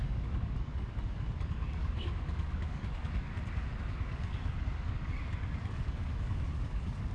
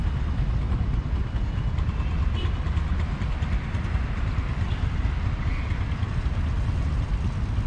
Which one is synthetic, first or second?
first